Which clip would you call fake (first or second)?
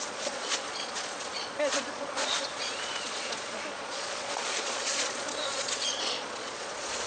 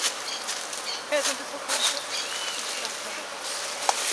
first